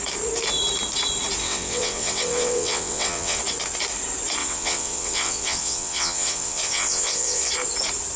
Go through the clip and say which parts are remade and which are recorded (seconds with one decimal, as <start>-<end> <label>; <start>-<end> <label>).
0.0-1.4 recorded; 1.4-3.4 remade; 3.4-4.4 recorded; 4.4-7.5 remade; 7.5-8.2 recorded